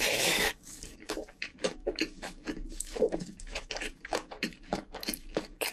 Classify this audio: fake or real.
fake